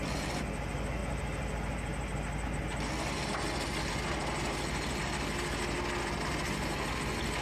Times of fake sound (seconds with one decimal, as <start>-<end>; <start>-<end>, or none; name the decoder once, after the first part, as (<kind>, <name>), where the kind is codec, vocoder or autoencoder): none